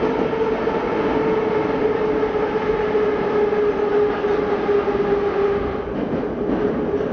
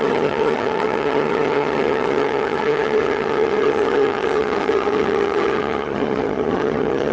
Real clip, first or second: first